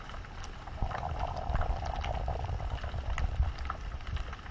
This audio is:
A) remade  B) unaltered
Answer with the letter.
A